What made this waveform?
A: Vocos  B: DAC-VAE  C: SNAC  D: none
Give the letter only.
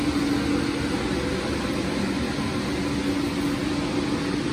D